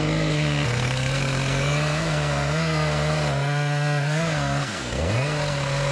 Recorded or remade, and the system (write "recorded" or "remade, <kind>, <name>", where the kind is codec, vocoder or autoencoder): remade, codec, SNAC